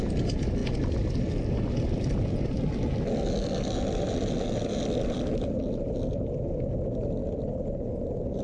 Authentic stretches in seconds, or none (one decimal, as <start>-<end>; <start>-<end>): 0.0-0.6; 1.5-7.2; 8.0-8.4